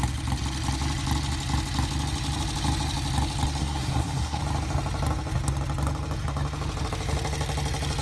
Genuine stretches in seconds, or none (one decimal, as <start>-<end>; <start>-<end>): 0.0-3.6; 4.4-8.0